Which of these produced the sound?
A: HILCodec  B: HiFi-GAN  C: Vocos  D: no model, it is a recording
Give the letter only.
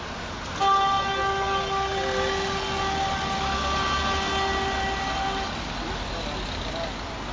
D